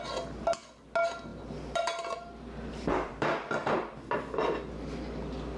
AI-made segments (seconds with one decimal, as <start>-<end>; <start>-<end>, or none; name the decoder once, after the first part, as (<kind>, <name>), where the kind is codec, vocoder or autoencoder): 1.3-4.7 (vocoder, BigVGAN v2)